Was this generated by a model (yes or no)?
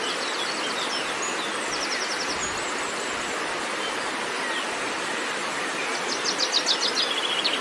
no